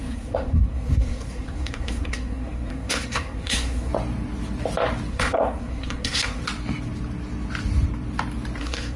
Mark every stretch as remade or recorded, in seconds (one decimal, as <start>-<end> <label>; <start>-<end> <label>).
0.0-3.9 remade; 3.9-5.1 recorded; 5.1-6.4 remade; 6.4-8.6 recorded; 8.6-9.0 remade